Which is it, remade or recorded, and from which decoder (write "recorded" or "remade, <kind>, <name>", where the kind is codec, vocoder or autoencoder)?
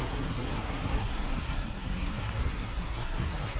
remade, codec, SNAC